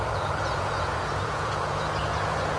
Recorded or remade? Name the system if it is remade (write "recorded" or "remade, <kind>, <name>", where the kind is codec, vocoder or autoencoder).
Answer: remade, vocoder, Vocos